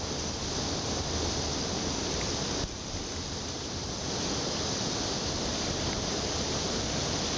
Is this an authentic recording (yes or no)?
yes